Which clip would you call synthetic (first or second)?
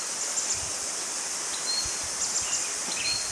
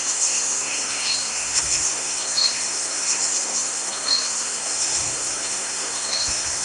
second